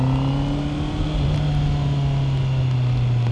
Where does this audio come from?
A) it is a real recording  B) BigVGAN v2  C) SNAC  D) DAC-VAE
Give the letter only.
A